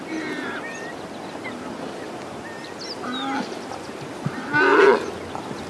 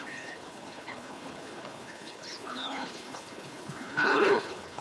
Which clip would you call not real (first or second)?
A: second